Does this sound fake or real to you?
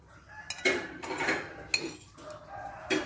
real